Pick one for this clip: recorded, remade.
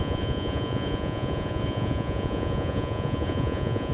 remade